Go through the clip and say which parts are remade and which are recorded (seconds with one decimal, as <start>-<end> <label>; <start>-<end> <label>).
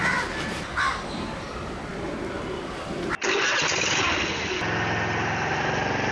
0.0-6.1 recorded